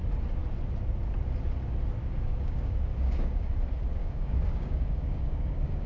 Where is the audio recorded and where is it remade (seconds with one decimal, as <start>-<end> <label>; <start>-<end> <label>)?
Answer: 0.0-2.0 recorded; 2.0-3.5 remade; 3.5-4.0 recorded; 4.0-5.9 remade